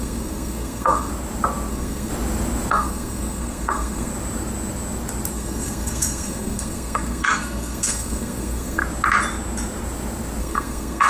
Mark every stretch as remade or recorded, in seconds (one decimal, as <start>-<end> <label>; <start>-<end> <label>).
0.0-1.1 remade; 1.1-1.7 recorded; 1.7-2.1 remade; 2.1-2.7 recorded; 2.7-4.1 remade; 4.1-5.3 recorded; 5.3-8.8 remade; 8.8-10.4 recorded; 10.4-11.1 remade